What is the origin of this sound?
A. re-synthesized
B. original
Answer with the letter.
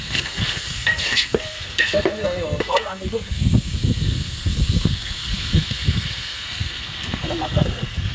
A